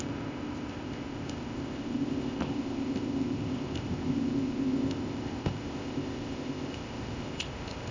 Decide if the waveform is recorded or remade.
remade